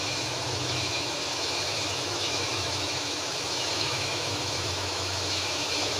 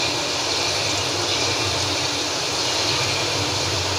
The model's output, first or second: first